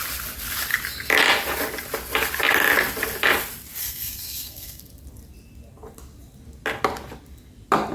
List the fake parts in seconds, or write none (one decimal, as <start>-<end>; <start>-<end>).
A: 3.8-4.8

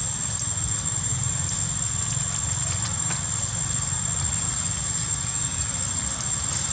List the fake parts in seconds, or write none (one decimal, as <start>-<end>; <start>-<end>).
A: none

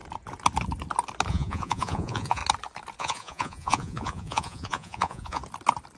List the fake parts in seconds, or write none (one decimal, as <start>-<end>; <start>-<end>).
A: 1.3-2.4; 3.0-5.4

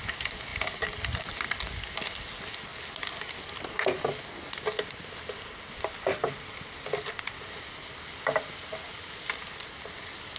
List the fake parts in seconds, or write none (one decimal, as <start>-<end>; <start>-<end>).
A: 0.5-1.5

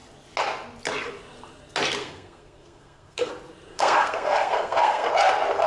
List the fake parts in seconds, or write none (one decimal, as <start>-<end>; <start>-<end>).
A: 2.0-3.3; 3.7-5.1

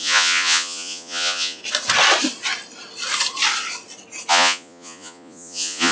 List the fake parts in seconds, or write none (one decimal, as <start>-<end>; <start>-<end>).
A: 0.0-1.6; 4.3-5.9

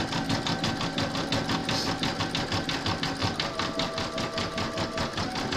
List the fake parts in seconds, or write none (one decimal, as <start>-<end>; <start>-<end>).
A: none